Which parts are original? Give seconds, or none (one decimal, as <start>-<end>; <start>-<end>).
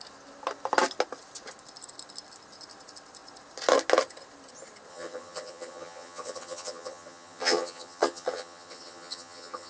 0.0-4.9